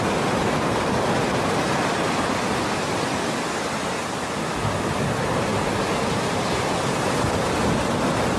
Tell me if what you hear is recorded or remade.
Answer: recorded